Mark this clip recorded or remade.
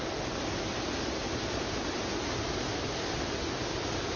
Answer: recorded